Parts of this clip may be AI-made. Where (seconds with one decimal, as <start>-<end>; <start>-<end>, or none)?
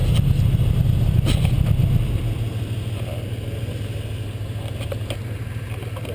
none